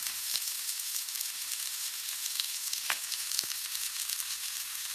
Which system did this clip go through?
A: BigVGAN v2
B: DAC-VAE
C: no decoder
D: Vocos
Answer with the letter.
B